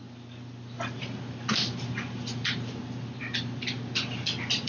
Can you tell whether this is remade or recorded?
recorded